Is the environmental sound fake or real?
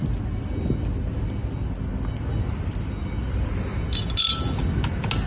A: real